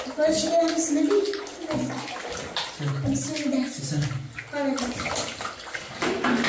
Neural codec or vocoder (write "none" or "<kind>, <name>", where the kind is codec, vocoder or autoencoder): none